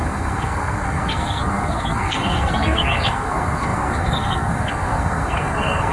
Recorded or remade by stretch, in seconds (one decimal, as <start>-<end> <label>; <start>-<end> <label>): 0.0-5.9 remade